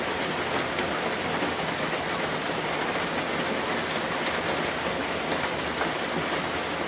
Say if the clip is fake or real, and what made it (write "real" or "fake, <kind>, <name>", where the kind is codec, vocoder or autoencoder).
real